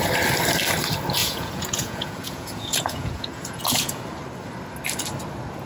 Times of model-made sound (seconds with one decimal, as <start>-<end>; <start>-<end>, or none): 1.2-4.0